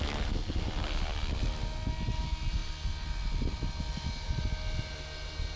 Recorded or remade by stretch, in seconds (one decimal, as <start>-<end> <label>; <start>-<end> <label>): 0.0-5.6 recorded